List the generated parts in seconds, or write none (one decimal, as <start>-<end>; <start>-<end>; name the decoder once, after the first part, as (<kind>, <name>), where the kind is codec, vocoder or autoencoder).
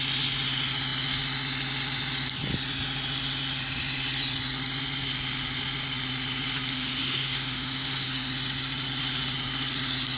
6.7-8.3 (autoencoder, DAC-VAE)